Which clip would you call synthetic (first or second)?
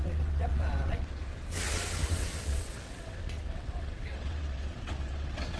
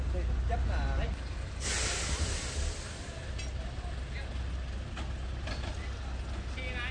first